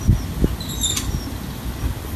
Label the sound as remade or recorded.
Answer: recorded